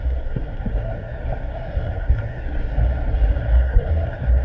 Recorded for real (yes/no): no